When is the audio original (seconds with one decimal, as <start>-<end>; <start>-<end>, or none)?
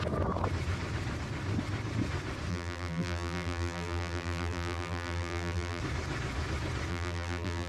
0.0-2.5; 5.8-6.9